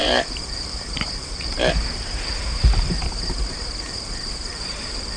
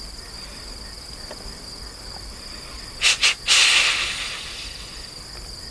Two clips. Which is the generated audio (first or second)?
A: first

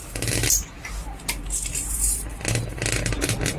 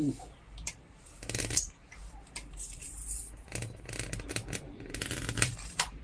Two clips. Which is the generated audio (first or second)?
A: second